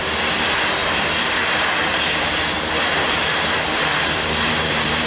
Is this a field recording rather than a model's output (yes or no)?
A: no